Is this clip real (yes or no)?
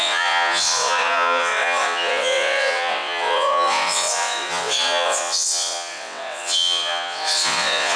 no